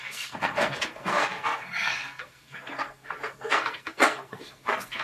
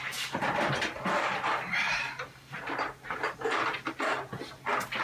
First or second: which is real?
second